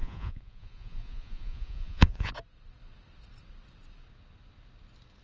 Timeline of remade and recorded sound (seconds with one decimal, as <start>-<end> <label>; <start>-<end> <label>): 0.0-2.3 remade; 2.3-5.2 recorded